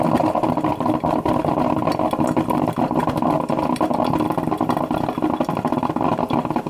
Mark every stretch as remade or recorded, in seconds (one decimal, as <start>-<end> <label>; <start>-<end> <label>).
0.0-1.9 remade; 1.9-2.4 recorded; 2.4-3.0 remade; 3.0-3.5 recorded; 3.5-6.7 remade